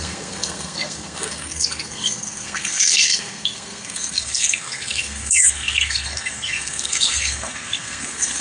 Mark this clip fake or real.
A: fake